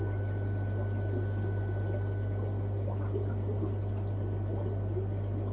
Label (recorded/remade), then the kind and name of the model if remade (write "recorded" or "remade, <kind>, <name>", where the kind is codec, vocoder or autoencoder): recorded